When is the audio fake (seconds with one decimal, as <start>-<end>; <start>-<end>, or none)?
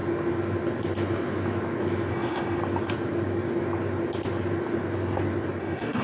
2.1-2.6; 5.6-6.0